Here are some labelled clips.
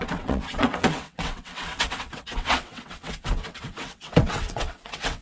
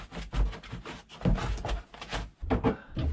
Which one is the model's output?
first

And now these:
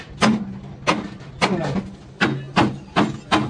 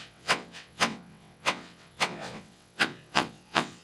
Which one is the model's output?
second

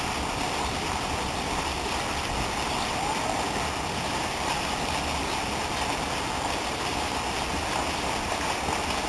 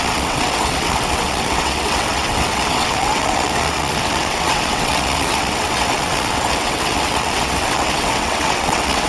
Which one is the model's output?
second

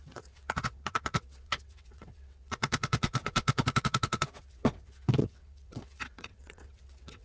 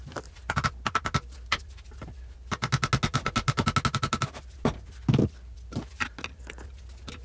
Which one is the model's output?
first